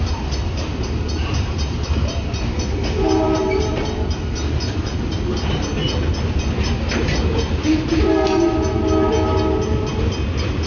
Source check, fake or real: real